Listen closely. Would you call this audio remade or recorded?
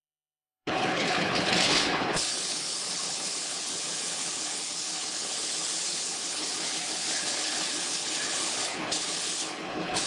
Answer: remade